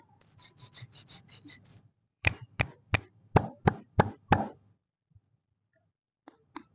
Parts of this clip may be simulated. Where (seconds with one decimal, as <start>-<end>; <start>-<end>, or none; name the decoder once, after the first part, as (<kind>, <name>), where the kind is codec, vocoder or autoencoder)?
1.7-2.6 (vocoder, BigVGAN v2)